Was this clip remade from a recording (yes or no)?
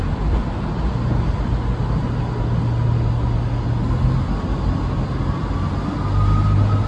no